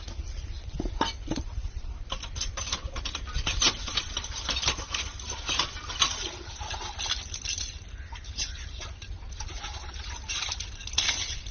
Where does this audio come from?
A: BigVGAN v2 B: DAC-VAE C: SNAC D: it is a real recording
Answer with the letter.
D